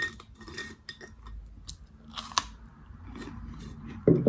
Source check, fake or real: real